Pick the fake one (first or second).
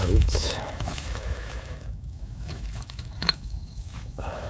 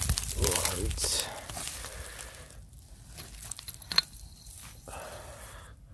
first